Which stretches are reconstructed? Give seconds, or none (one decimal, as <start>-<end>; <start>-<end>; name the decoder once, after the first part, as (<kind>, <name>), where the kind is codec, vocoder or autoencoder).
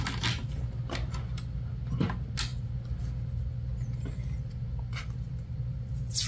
none